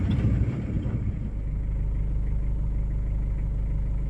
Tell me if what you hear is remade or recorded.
recorded